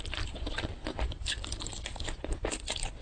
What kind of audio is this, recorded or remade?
remade